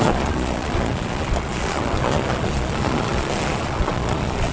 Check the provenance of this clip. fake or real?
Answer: fake